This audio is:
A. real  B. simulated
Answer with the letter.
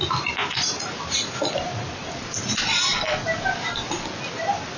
A